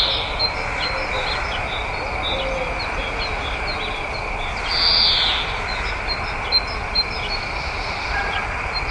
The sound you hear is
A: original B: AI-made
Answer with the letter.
A